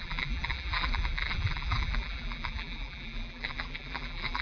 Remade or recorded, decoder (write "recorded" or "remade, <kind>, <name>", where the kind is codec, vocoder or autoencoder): remade, vocoder, BigVGAN v2